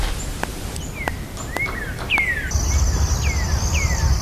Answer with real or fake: real